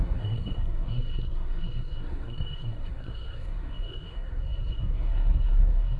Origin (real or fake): fake